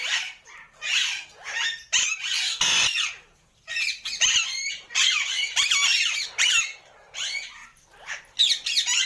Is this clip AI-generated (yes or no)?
yes